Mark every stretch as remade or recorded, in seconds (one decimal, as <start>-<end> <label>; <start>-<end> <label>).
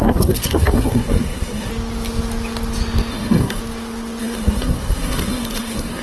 0.0-1.7 remade; 1.7-3.1 recorded; 3.1-3.6 remade; 3.6-4.2 recorded; 4.2-6.0 remade